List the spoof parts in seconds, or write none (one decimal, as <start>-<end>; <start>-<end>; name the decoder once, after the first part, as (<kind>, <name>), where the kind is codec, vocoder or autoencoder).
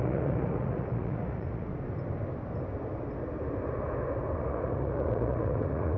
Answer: 0.0-1.7 (vocoder, Vocos); 4.4-6.0